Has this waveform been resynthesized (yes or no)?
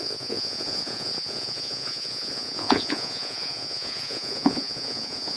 yes